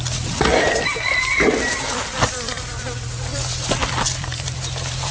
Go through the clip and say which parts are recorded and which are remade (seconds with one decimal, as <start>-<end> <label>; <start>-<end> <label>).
0.0-5.1 remade